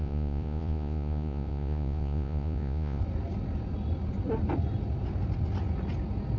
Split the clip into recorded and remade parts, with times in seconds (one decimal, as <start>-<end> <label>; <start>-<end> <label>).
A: 0.0-3.0 remade; 3.0-6.4 recorded